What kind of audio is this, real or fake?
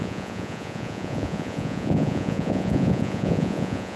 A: fake